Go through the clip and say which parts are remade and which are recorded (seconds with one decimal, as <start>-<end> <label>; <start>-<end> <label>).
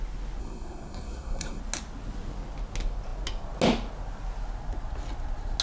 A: 0.0-0.4 recorded; 0.4-1.6 remade; 1.6-5.6 recorded